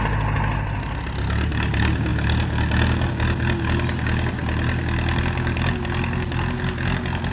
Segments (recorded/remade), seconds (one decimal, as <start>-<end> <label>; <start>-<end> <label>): 0.0-7.3 recorded